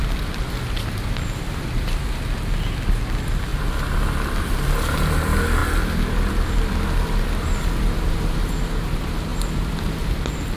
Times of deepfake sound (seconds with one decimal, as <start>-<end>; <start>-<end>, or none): 9.3-10.0